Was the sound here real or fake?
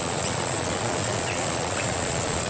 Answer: fake